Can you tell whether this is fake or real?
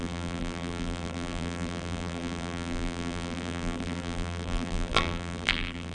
fake